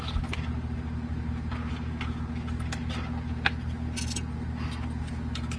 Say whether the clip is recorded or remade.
recorded